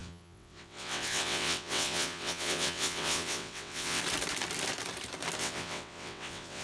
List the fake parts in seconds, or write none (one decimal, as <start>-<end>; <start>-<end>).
0.0-4.0; 5.4-6.6